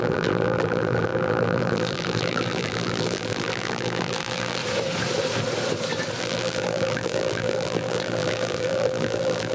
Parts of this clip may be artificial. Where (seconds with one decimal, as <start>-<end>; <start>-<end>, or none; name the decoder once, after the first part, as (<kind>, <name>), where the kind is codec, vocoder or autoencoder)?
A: 0.0-4.6 (vocoder, BigVGAN v2); 6.2-9.5